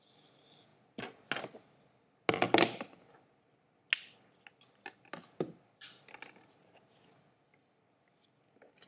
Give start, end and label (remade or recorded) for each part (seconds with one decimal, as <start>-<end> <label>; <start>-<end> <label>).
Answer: 0.0-8.9 recorded